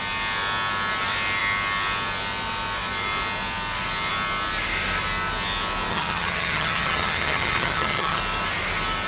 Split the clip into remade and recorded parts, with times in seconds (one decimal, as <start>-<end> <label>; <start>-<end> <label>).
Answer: 0.0-5.9 recorded; 5.9-8.2 remade; 8.2-9.1 recorded